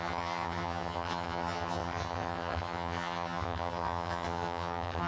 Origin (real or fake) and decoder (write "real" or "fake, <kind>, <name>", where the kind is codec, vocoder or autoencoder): fake, vocoder, HiFi-GAN